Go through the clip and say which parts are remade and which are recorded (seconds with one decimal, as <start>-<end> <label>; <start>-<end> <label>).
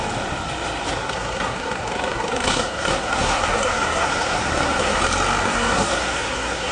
0.0-1.0 recorded; 1.0-5.0 remade; 5.0-5.4 recorded; 5.4-6.7 remade